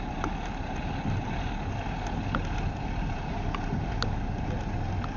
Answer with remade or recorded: recorded